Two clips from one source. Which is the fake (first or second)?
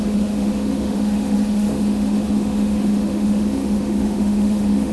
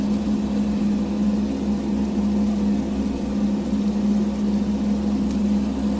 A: first